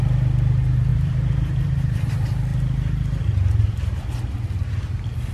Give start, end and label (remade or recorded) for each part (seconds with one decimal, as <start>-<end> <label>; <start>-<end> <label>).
0.0-0.9 recorded; 0.9-2.1 remade; 2.1-5.3 recorded